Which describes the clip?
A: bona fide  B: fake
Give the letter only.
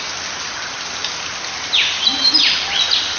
A